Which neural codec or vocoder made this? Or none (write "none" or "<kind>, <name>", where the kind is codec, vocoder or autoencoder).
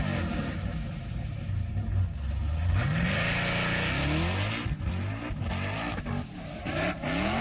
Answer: none